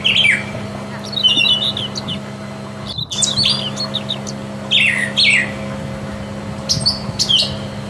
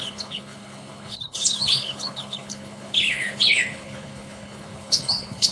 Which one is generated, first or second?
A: second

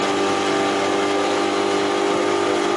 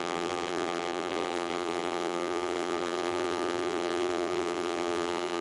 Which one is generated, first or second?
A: second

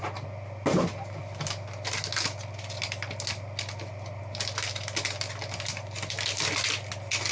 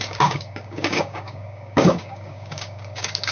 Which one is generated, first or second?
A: second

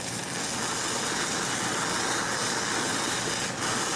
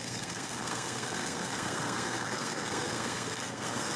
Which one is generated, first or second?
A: second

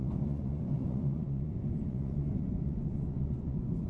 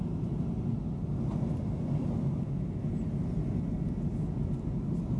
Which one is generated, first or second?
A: first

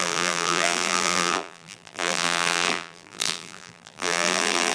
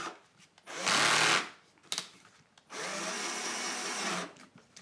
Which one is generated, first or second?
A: first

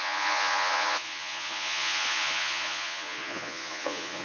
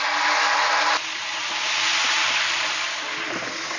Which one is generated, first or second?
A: first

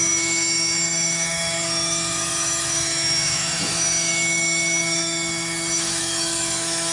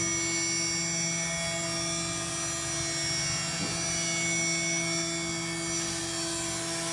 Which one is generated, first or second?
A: first